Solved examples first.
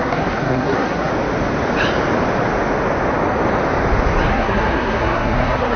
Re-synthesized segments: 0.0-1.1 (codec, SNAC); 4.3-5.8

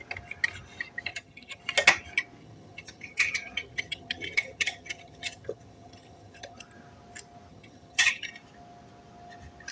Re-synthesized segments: 1.1-1.6 (vocoder, HiFi-GAN); 2.4-6.6; 7.5-8.3

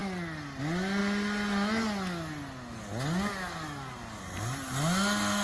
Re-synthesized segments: none